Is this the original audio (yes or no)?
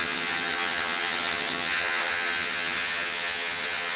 no